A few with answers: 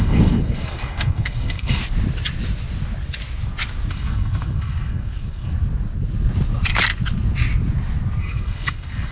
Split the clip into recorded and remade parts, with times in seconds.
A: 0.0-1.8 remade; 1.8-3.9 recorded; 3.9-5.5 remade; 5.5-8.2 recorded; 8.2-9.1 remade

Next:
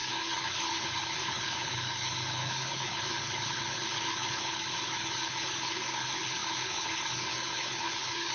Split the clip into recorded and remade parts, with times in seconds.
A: 0.0-8.3 remade

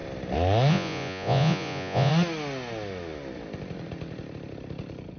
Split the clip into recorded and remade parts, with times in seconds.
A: 0.0-0.7 recorded; 0.7-2.1 remade; 2.1-5.2 recorded

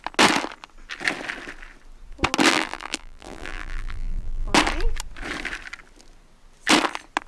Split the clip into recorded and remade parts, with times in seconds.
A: 0.0-2.5 recorded; 2.5-4.5 remade; 4.5-7.3 recorded